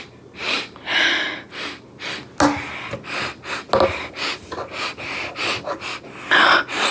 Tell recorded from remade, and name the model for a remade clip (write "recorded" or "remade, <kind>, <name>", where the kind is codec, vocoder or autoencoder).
recorded